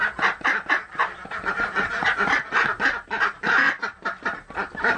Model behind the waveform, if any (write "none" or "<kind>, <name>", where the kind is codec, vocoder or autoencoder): none